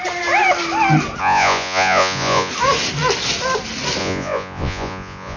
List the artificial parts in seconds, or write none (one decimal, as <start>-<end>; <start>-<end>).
1.2-2.5; 4.0-5.4